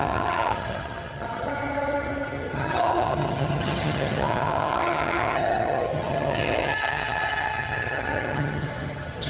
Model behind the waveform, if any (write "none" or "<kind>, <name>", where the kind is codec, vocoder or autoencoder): vocoder, HiFi-GAN